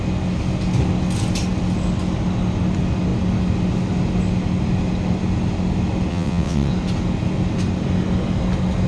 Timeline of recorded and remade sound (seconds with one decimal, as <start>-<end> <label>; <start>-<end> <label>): 0.0-6.1 recorded; 6.1-6.7 remade; 6.7-8.9 recorded